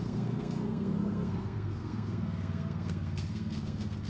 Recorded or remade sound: remade